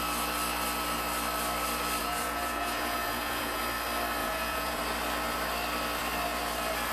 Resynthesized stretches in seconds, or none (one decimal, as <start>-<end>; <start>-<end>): 2.0-3.6; 4.2-4.8

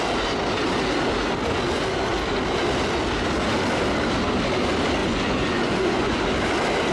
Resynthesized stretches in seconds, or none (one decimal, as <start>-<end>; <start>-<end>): 5.0-6.2

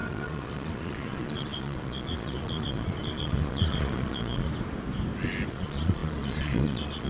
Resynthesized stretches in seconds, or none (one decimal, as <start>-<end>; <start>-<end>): 0.0-4.5; 5.5-7.1

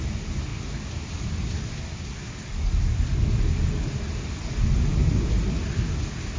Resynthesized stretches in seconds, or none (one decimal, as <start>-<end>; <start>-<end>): none

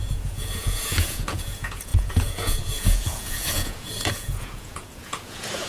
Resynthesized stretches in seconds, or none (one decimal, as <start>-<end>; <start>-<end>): 0.0-5.7

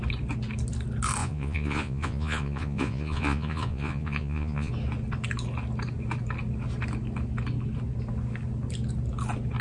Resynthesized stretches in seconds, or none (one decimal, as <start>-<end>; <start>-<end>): 1.2-4.7